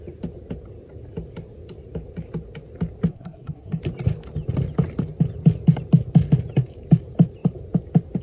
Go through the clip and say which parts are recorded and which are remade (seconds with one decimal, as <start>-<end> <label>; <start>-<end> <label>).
0.0-3.1 recorded; 3.1-3.8 remade; 3.8-8.2 recorded